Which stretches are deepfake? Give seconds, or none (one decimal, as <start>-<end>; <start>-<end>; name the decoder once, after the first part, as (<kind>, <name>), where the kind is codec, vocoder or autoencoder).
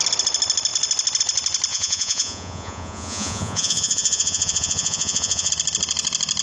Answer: 1.7-5.5 (vocoder, Vocos)